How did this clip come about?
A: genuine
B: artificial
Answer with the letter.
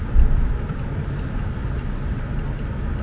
A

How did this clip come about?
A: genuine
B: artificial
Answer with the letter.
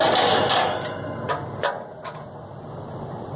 A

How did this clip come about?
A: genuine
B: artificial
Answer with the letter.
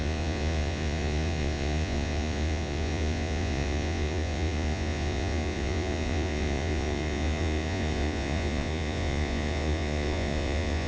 B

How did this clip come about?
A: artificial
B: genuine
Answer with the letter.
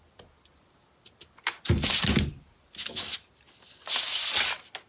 B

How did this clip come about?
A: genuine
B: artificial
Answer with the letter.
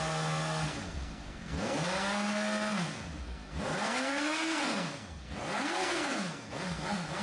B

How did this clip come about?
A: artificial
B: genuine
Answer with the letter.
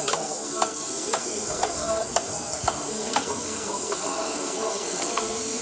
A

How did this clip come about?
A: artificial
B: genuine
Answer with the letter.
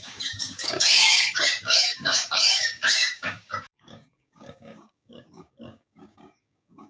A